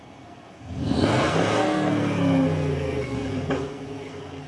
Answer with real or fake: fake